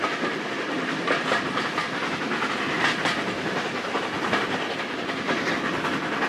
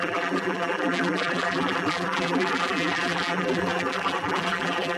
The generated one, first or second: second